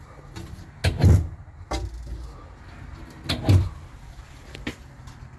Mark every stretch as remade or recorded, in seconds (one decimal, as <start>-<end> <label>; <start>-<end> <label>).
0.0-0.8 remade; 0.8-4.0 recorded; 4.0-5.4 remade